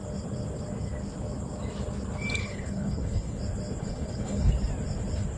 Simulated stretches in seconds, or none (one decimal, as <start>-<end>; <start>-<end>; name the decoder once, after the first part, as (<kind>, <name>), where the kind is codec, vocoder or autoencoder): 2.4-3.4 (codec, HILCodec); 3.8-4.5